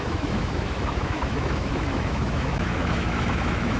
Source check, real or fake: fake